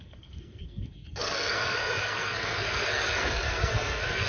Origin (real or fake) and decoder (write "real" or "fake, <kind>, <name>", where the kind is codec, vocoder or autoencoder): fake, codec, SNAC